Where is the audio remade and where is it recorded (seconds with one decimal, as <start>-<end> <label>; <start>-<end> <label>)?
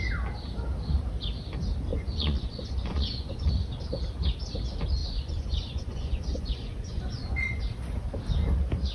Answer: 0.0-1.9 recorded; 1.9-3.5 remade; 3.5-5.0 recorded; 5.0-7.6 remade; 7.6-8.9 recorded